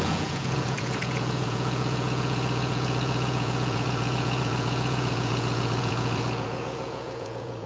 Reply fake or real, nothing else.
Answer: fake